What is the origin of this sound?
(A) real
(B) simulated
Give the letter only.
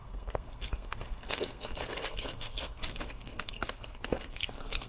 B